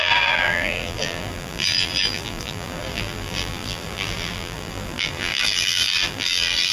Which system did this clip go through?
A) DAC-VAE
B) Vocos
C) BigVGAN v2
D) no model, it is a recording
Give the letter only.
C